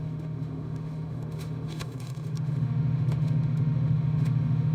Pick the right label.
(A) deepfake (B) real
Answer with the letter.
A